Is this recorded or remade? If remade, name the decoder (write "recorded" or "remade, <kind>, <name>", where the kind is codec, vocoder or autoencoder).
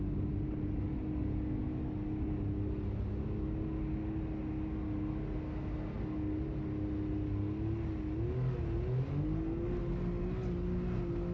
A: recorded